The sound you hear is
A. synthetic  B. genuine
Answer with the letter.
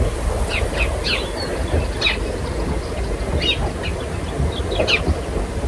B